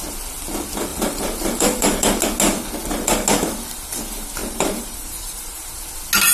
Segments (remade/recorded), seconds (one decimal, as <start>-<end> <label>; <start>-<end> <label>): 0.0-0.9 recorded; 0.9-2.2 remade; 2.2-4.4 recorded; 4.4-5.8 remade; 5.8-6.3 recorded